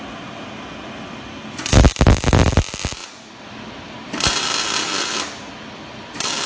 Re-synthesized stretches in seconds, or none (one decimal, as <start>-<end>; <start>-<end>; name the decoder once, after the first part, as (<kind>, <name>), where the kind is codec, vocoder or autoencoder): none

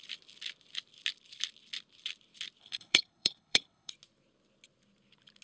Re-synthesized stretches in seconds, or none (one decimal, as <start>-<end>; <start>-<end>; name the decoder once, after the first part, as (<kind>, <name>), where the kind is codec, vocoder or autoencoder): 2.6-3.9 (codec, HILCodec)

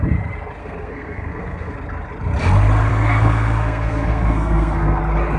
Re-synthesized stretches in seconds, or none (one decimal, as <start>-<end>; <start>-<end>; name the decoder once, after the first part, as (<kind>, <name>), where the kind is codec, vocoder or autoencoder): 0.6-1.7 (codec, SNAC); 2.9-5.0

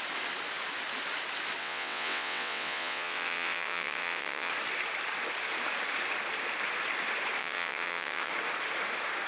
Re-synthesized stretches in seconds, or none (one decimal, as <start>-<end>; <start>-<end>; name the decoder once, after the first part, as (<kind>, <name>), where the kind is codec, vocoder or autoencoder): 1.6-4.5 (vocoder, WaveNeXt); 7.4-8.3

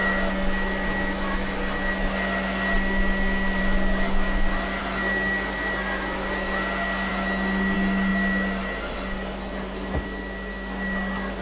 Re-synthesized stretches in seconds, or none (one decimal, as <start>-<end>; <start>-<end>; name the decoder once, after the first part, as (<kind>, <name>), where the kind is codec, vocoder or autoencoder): none

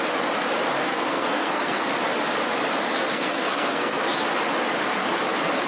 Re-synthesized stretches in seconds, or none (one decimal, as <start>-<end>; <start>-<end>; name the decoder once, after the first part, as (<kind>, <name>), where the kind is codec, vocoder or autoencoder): 0.8-1.9 (codec, SNAC); 3.1-4.0

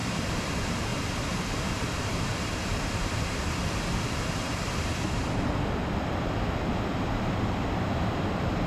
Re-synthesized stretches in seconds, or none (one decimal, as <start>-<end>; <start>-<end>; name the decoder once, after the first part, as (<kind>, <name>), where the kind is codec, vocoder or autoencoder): 0.0-0.5 (vocoder, BigVGAN v2); 0.9-5.3

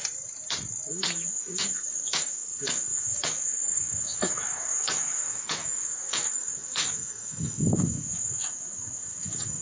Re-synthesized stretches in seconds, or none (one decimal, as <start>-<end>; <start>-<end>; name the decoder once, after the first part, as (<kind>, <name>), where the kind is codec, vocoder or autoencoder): 0.9-9.6 (autoencoder, DAC-VAE)